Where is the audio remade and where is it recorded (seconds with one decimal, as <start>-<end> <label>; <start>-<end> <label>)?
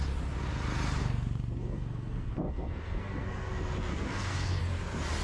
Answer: 0.0-1.0 recorded; 1.0-3.5 remade; 3.5-3.9 recorded; 3.9-4.6 remade; 4.6-5.2 recorded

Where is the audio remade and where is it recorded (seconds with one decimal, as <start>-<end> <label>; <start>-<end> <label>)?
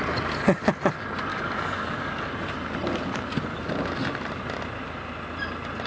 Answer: 0.0-1.3 recorded; 1.3-2.3 remade; 2.3-5.9 recorded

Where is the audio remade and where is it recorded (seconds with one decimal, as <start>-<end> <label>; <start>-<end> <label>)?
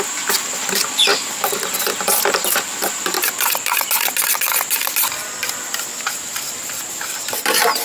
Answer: 0.0-5.2 recorded; 5.2-6.5 remade; 6.5-7.8 recorded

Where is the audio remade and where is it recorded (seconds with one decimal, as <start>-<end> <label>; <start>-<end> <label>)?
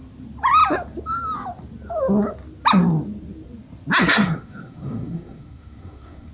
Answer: 0.0-4.0 recorded; 4.0-6.3 remade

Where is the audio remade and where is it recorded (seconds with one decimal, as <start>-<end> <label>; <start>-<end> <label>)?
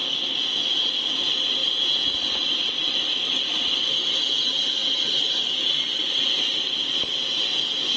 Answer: 0.0-1.6 recorded; 1.6-2.1 remade; 2.1-8.0 recorded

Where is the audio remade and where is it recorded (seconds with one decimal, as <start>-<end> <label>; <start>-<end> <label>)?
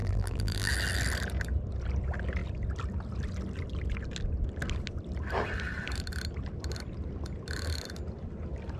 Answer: 0.0-0.7 remade; 0.7-8.8 recorded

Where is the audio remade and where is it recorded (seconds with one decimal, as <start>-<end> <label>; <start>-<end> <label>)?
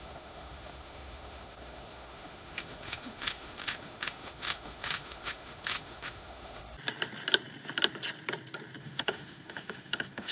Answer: 0.0-6.6 remade; 6.6-8.8 recorded; 8.8-10.3 remade